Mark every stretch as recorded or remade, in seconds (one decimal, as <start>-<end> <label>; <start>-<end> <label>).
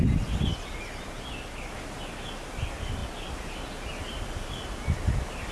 0.0-5.5 recorded